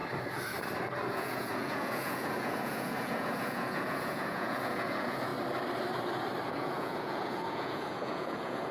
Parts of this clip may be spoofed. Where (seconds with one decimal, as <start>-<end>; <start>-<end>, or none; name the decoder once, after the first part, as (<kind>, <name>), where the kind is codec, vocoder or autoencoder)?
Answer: 1.1-5.3 (vocoder, Vocos); 6.5-8.7